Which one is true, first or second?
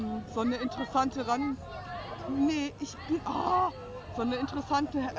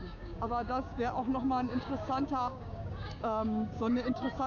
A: first